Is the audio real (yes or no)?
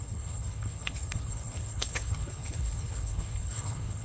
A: no